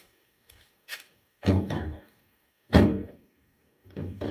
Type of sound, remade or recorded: remade